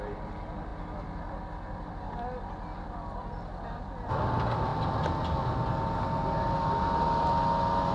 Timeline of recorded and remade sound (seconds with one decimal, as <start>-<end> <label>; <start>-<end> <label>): 0.0-7.9 recorded